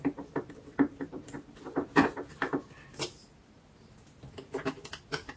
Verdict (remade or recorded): recorded